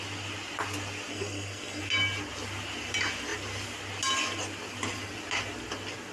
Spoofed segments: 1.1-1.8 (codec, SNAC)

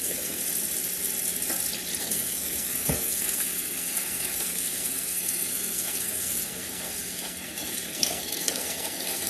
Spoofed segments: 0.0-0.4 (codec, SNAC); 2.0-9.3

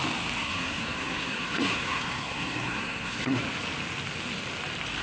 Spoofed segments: 0.4-3.4 (codec, SNAC)